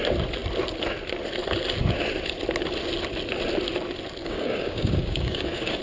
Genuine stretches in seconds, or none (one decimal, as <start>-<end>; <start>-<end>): 0.0-4.2